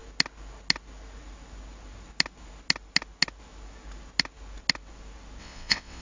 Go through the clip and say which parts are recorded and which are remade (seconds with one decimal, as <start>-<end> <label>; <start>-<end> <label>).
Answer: 0.0-5.4 recorded; 5.4-6.0 remade